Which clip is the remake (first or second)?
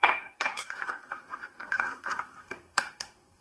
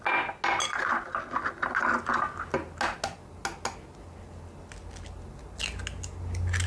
first